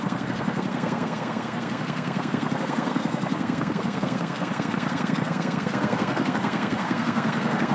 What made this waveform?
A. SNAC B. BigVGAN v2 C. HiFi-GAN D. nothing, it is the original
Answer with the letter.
A